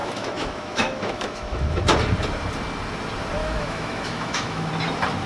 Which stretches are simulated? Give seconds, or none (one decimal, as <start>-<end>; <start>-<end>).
0.0-1.8; 3.4-4.7